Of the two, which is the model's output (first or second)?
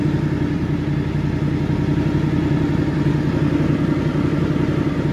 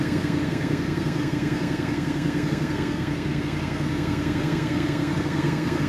second